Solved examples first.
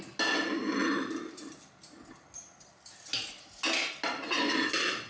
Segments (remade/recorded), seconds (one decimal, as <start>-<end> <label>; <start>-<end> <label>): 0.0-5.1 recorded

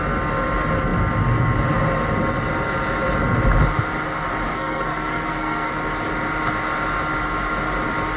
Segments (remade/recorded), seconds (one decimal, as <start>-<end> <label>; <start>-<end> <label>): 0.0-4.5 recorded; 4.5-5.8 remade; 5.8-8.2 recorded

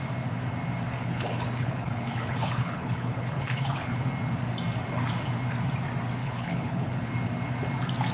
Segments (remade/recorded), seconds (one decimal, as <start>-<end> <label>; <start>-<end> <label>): 0.0-1.0 recorded; 1.0-4.0 remade; 4.0-6.2 recorded; 6.2-7.1 remade; 7.1-8.1 recorded